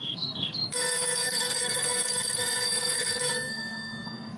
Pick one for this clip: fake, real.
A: fake